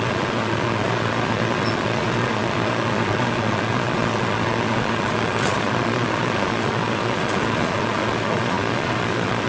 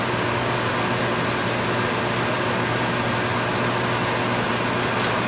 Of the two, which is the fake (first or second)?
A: first